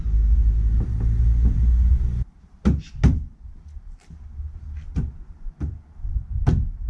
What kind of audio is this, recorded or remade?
recorded